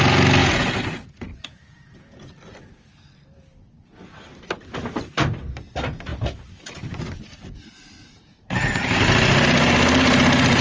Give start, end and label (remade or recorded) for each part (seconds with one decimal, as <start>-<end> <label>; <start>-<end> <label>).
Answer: 0.0-0.4 recorded; 0.4-2.3 remade; 2.3-8.0 recorded; 8.0-8.8 remade; 8.8-10.6 recorded